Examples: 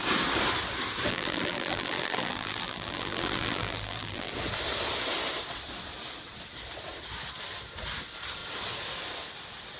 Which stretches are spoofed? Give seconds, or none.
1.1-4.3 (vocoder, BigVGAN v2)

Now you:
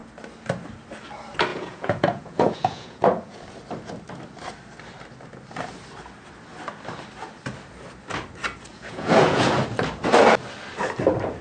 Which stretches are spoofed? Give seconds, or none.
1.5-3.4 (vocoder, Vocos); 8.7-9.5

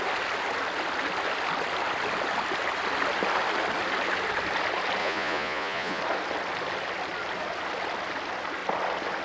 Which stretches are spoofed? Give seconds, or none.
5.0-6.0 (vocoder, Vocos)